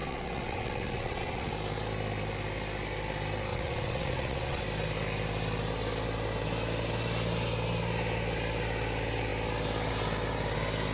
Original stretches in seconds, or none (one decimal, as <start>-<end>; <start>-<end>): 1.5-3.5; 4.6-10.9